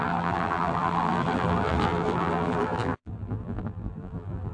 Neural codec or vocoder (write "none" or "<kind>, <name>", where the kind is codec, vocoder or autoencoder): vocoder, BigVGAN v2